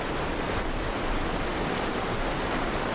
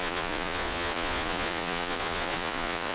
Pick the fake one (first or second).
second